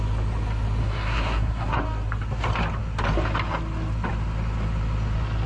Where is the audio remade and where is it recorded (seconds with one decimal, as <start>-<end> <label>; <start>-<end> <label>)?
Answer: 0.0-0.8 recorded; 0.8-1.8 remade; 1.8-5.5 recorded